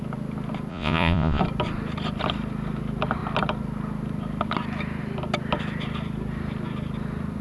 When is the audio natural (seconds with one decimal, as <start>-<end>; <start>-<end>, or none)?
0.0-0.7; 1.4-7.4